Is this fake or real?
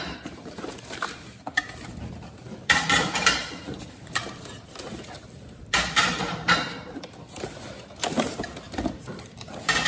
fake